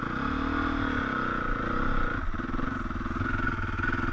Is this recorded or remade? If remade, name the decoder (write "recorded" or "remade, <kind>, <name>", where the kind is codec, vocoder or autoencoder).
recorded